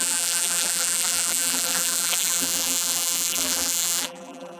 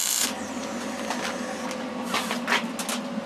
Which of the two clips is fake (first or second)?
first